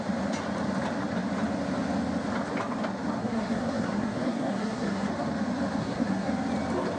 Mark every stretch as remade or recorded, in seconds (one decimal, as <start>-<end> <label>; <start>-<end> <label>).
0.0-3.2 recorded; 3.2-5.1 remade; 5.1-5.8 recorded; 5.8-6.3 remade; 6.3-7.0 recorded